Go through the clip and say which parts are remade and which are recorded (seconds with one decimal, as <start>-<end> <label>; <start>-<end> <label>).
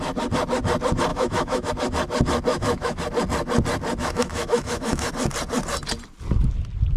0.0-1.1 recorded; 1.1-1.7 remade; 1.7-2.5 recorded; 2.5-3.0 remade; 3.0-4.0 recorded; 4.0-5.1 remade; 5.1-7.0 recorded